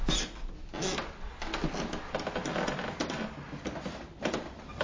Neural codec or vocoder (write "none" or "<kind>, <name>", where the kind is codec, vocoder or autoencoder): none